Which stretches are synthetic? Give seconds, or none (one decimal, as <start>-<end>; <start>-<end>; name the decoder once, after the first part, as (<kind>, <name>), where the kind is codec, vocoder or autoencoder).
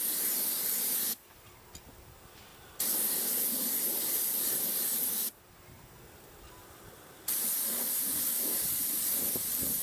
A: 6.6-9.0 (vocoder, BigVGAN v2)